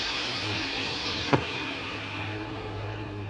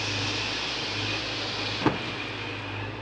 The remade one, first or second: first